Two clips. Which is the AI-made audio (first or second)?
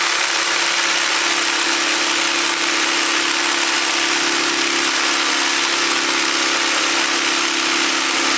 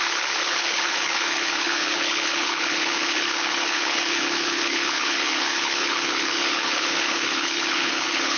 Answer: second